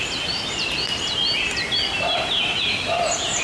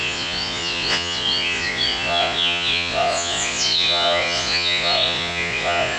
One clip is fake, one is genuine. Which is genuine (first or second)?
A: first